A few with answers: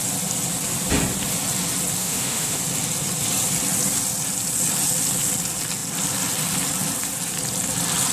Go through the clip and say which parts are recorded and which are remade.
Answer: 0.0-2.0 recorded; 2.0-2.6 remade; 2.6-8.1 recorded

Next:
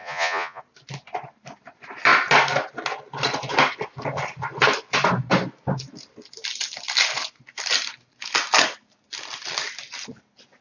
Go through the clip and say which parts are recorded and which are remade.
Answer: 0.0-0.6 remade; 0.6-10.6 recorded

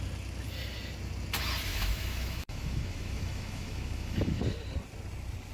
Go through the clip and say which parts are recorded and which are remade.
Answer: 0.0-1.7 recorded; 1.7-4.4 remade; 4.4-5.5 recorded

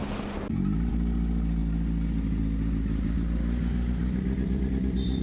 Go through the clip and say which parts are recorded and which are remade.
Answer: 0.0-5.2 recorded